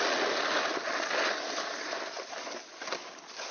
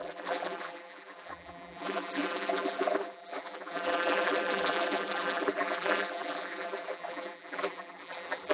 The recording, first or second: first